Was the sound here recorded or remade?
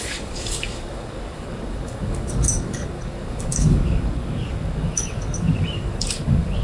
remade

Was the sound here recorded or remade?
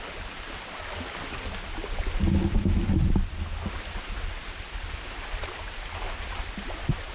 recorded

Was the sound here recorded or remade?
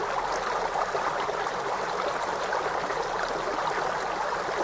recorded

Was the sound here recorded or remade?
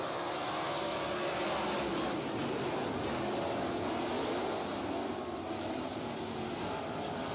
recorded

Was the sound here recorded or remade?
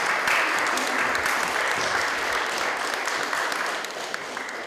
recorded